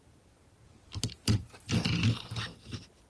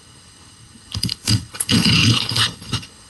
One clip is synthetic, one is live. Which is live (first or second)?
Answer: first